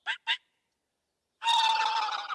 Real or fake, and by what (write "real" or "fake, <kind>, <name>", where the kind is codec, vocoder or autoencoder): real